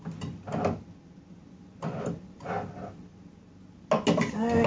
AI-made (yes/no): no